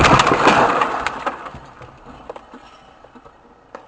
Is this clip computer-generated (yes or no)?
no